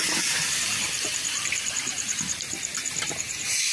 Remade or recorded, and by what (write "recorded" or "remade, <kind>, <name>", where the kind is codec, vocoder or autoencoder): remade, vocoder, BigVGAN v2